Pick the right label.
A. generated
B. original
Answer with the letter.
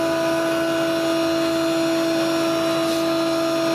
B